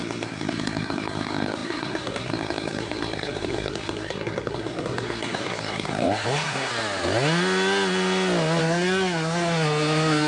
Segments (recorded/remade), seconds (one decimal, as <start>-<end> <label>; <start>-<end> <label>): 0.0-6.7 remade; 6.7-8.6 recorded; 8.6-10.3 remade